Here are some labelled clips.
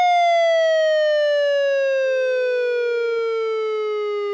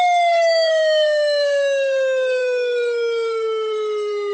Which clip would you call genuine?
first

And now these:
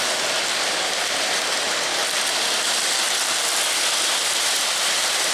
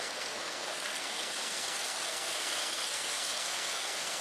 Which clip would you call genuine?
first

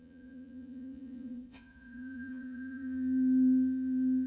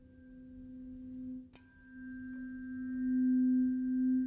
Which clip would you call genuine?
second